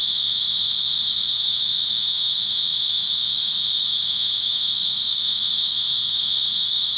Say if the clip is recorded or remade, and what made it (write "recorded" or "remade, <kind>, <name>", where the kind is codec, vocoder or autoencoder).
remade, autoencoder, DAC-VAE